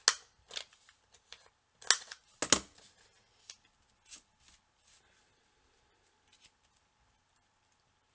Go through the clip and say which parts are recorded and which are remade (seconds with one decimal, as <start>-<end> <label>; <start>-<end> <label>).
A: 0.0-8.1 recorded